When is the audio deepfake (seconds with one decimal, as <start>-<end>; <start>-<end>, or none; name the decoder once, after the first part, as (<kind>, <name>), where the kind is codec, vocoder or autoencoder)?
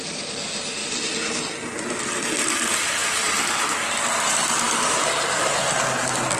3.0-5.0 (vocoder, BigVGAN v2)